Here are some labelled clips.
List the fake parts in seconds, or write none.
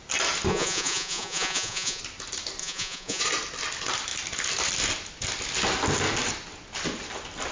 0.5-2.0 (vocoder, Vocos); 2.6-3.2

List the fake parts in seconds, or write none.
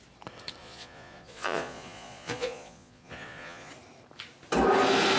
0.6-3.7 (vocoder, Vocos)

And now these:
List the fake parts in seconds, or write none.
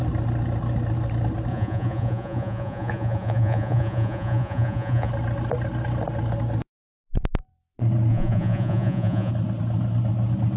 1.5-5.1 (vocoder, Vocos); 8.1-9.3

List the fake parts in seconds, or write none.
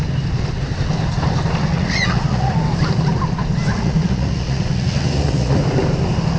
1.6-2.5 (vocoder, Vocos); 3.7-5.6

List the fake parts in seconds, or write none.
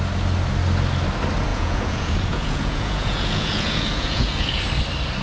1.5-4.6 (vocoder, Vocos)